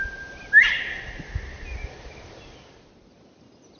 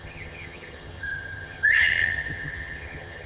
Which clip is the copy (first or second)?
second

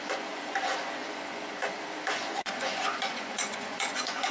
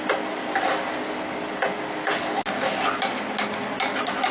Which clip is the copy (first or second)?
first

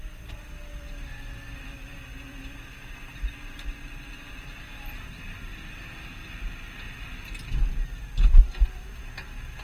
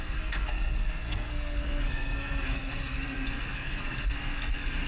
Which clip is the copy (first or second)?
second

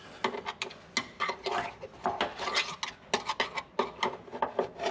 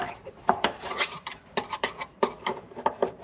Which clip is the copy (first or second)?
second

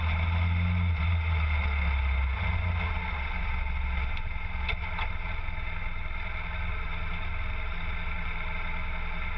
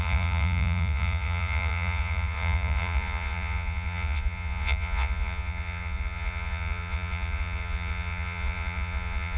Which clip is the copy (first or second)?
second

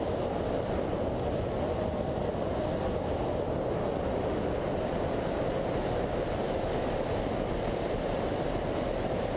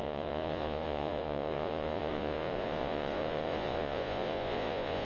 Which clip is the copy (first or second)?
second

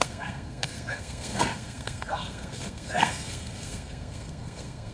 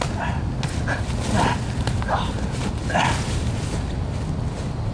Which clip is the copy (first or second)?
first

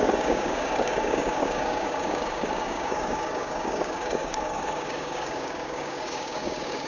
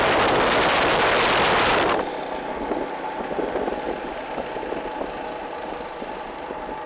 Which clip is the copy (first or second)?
first